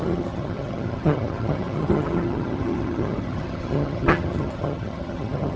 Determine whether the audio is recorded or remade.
remade